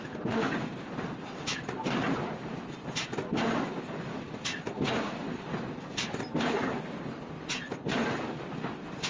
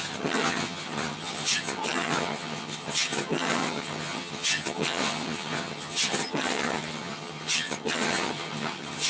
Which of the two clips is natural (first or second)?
first